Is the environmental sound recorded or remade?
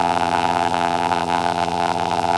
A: remade